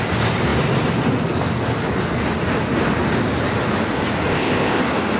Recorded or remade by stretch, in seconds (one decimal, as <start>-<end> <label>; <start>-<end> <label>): 0.0-4.3 recorded; 4.3-4.8 remade; 4.8-5.2 recorded